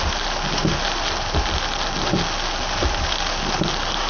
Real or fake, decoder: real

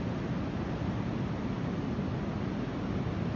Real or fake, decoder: real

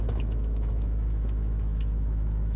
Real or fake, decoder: fake, autoencoder, DAC-VAE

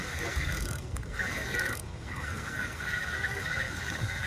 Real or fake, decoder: fake, codec, SNAC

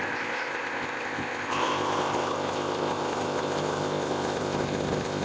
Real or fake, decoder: fake, codec, ZipCodec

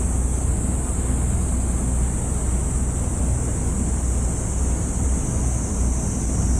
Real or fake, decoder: real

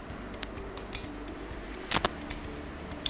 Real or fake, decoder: real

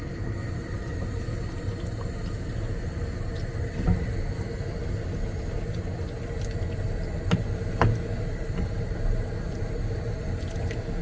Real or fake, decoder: real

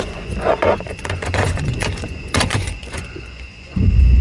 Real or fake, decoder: fake, vocoder, Vocos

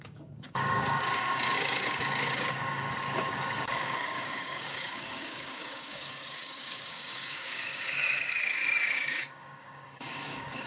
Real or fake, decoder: fake, codec, DAC